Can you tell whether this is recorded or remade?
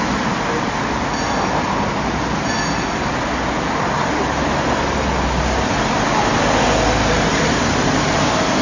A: recorded